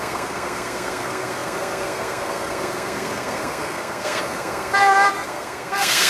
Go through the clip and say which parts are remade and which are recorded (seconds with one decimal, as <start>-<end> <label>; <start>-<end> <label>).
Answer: 0.0-6.1 remade